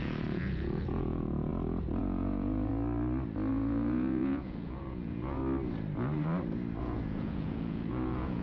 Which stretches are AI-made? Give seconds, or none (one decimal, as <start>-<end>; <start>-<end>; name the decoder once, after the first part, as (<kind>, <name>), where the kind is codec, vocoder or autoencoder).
0.0-1.5 (vocoder, Vocos); 2.0-2.7; 3.5-5.4; 6.8-8.4

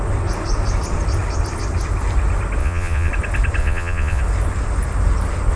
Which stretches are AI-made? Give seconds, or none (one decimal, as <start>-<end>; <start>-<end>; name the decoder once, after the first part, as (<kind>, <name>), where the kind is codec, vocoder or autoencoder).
2.6-3.1 (vocoder, Vocos); 3.6-4.2

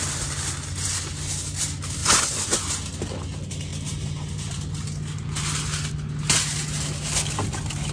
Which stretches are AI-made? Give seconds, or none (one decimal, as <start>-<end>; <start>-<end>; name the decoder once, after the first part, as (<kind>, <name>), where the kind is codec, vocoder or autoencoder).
2.0-2.6 (vocoder, Vocos)

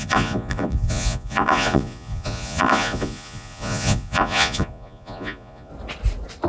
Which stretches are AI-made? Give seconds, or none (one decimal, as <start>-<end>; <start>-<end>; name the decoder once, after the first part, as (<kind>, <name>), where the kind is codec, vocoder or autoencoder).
0.0-5.7 (vocoder, Vocos)

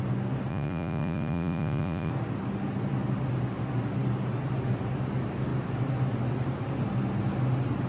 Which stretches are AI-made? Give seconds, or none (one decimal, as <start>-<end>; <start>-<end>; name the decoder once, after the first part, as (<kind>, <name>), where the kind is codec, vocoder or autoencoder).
0.5-2.1 (vocoder, Vocos)

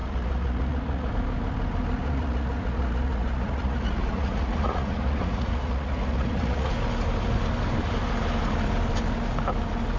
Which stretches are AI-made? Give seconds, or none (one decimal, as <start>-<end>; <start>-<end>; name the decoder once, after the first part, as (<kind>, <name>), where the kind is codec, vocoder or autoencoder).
0.0-1.1 (vocoder, Vocos); 2.0-6.7